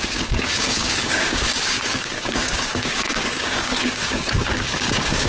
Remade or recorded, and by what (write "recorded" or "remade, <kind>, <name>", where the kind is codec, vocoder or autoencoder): remade, codec, DAC